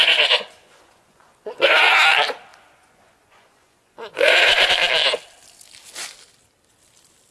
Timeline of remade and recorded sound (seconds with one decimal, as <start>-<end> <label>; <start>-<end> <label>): 0.0-1.8 remade; 1.8-2.5 recorded; 2.5-4.7 remade; 4.7-7.3 recorded